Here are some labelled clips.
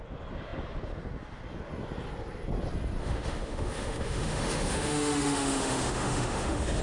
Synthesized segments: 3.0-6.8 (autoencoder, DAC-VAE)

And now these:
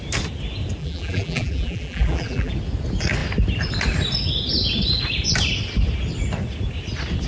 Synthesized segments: 0.8-2.5 (vocoder, BigVGAN v2)

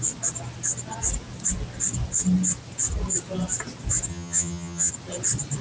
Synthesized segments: 4.1-4.9 (vocoder, HiFi-GAN)

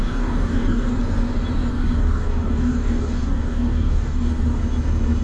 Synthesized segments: 0.0-0.9 (codec, DAC); 1.7-4.6

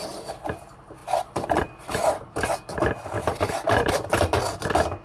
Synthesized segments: 1.0-3.9 (vocoder, BigVGAN v2)

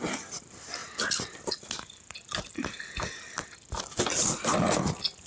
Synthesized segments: none